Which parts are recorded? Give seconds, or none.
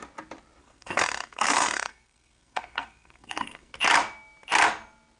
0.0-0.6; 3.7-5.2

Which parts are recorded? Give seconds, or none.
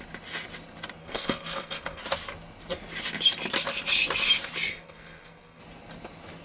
0.0-1.0; 2.0-4.7; 5.6-6.4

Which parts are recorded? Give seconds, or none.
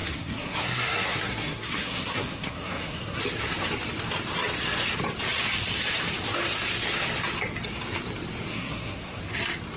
3.2-8.5; 9.2-9.8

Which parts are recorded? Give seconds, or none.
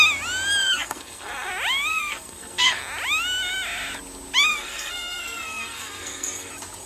0.0-0.6; 1.5-1.9; 2.8-4.5; 6.5-6.9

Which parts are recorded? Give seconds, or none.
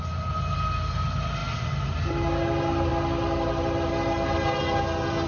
0.0-5.3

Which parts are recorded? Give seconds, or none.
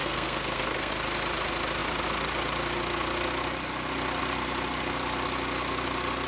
0.9-6.3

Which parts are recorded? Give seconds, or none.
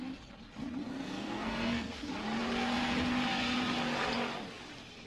0.0-0.8; 1.9-5.1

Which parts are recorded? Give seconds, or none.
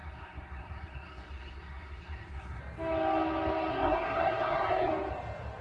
2.6-3.7; 4.9-5.6